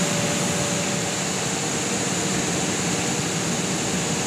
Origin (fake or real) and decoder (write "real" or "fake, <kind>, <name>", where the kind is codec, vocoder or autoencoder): real